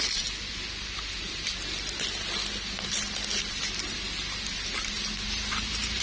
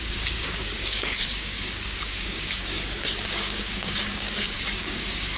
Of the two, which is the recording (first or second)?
first